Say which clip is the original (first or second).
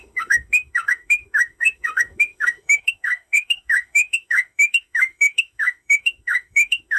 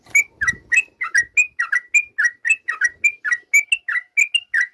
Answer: second